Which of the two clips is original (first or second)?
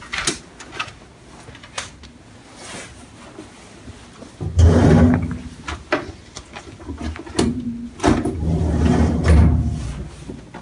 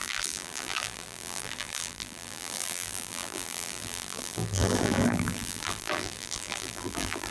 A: first